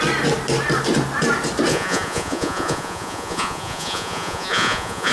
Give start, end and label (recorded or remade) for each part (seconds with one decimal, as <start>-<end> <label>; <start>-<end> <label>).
0.0-1.7 recorded; 1.7-5.1 remade